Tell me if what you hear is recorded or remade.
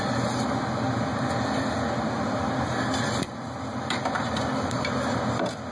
recorded